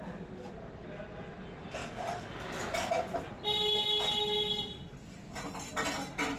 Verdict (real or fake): real